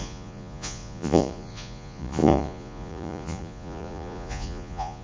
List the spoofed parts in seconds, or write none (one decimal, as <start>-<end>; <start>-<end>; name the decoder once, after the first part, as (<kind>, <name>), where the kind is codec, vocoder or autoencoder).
0.0-5.0 (vocoder, Vocos)